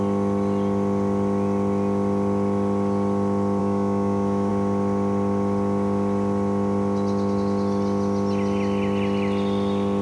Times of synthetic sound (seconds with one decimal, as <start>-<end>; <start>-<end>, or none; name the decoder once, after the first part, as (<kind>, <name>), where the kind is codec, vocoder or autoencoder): 3.6-4.5 (autoencoder, DAC-VAE)